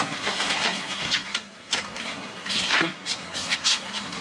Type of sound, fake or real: fake